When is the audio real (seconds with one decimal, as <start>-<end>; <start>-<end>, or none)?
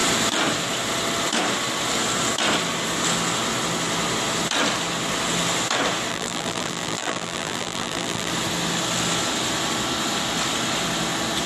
0.0-6.1; 8.3-11.5